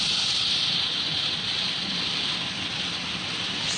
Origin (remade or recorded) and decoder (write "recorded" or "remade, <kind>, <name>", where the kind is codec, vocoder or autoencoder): recorded